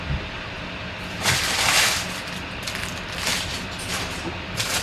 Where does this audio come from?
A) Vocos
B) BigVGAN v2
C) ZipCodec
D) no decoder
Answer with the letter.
B